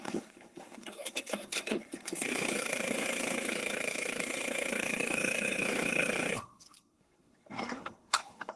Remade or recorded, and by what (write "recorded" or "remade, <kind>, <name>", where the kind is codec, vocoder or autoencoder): remade, codec, SNAC